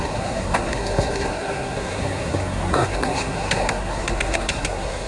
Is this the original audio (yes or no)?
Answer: no